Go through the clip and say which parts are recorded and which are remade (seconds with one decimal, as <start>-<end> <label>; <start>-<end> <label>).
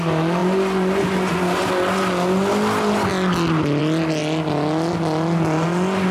0.0-6.1 recorded